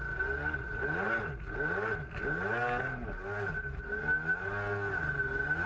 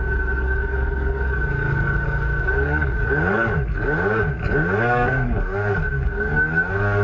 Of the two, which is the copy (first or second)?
second